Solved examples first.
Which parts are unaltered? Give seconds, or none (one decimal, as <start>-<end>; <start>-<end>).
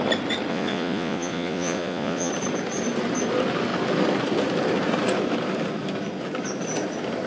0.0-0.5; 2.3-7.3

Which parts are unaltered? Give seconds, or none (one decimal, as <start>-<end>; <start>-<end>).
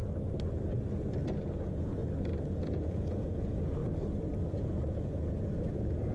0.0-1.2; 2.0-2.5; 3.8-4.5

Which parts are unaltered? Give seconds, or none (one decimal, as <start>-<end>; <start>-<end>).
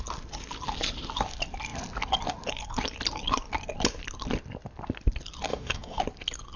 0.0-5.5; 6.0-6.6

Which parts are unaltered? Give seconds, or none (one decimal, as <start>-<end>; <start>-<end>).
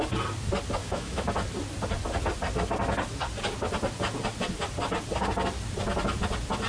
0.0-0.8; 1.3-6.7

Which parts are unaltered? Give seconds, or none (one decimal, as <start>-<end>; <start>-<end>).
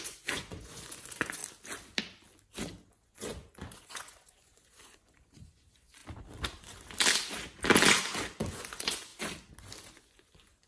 1.4-2.9; 6.0-8.5; 9.1-9.9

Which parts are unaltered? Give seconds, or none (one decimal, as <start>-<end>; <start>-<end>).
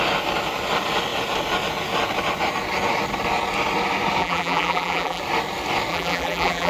0.0-4.2; 5.2-5.9